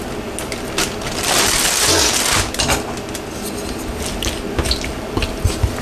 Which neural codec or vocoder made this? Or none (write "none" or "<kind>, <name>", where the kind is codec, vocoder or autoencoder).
none